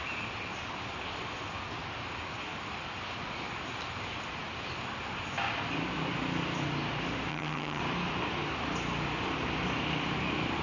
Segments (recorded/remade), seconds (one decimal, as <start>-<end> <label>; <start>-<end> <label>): 0.0-7.3 recorded; 7.3-7.8 remade; 7.8-10.6 recorded